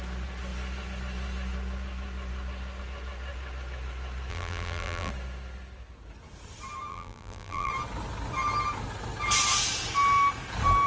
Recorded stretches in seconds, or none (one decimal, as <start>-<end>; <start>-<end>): 0.0-4.3; 5.1-6.9; 7.7-10.9

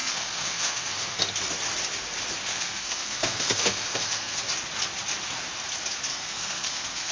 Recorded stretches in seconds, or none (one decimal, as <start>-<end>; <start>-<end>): 1.2-2.5; 4.4-6.1